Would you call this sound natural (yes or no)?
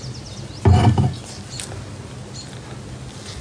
yes